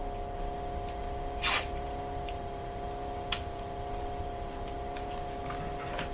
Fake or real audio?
real